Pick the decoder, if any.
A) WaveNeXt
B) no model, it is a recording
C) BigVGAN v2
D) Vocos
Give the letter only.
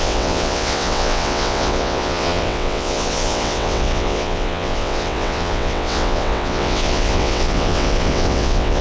A